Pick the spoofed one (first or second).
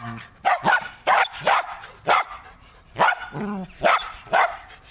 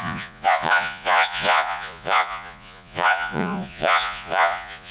second